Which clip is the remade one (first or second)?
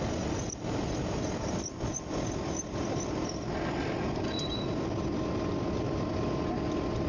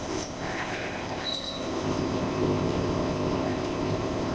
second